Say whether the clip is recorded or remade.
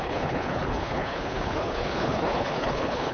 remade